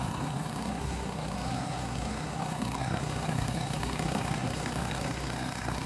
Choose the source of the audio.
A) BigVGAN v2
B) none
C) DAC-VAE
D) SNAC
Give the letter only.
D